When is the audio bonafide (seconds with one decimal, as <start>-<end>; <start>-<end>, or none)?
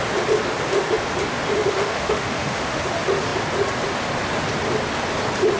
0.0-1.6; 2.8-5.6